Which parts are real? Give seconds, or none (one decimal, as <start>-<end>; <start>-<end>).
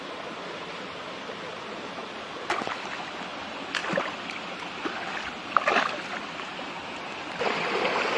0.0-8.2